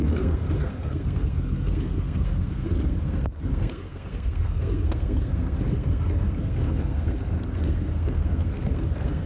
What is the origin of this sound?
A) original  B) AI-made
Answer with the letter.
B